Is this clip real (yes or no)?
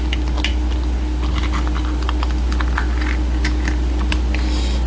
yes